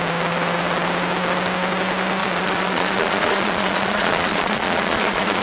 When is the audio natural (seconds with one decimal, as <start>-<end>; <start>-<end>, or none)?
0.0-2.2